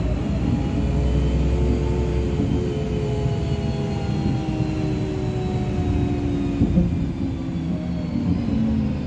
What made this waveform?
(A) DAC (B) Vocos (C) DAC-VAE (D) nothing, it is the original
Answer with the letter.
D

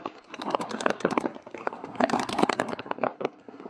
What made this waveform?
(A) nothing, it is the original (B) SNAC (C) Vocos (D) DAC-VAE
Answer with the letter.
B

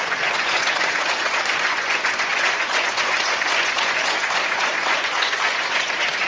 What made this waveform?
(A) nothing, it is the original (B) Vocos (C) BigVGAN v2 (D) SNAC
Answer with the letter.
B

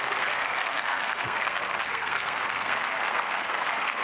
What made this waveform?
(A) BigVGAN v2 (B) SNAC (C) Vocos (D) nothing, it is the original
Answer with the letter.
B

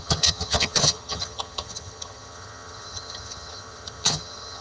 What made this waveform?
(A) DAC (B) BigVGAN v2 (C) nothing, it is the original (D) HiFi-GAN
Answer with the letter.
D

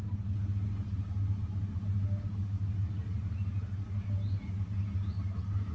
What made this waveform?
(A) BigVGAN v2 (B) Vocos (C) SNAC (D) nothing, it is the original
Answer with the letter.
D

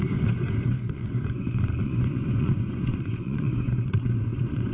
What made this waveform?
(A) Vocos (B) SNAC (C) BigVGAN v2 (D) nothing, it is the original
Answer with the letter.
A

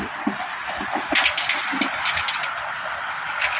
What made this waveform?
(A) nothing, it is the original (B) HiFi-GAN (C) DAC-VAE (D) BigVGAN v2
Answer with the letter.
A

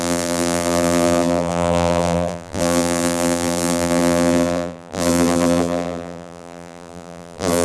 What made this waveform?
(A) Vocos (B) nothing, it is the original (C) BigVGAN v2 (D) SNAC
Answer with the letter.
C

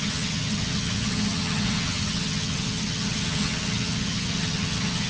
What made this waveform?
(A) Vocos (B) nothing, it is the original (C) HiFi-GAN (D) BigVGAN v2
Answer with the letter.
C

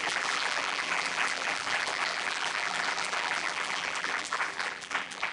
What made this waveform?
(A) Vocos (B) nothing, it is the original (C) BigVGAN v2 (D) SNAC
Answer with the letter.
C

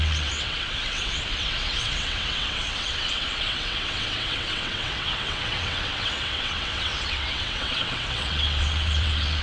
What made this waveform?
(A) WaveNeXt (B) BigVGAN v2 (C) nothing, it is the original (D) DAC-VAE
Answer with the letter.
A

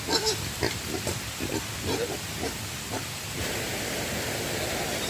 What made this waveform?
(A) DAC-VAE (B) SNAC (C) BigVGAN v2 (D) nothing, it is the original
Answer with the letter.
D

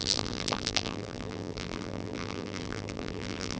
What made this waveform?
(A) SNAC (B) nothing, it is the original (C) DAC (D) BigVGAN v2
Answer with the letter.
D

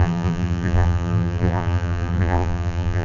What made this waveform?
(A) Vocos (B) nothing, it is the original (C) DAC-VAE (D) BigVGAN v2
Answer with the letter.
D